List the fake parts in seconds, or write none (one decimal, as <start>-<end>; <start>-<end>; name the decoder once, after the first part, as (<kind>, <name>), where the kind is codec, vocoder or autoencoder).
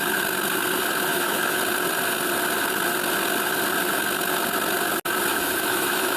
1.1-1.6 (autoencoder, DAC-VAE); 5.3-6.2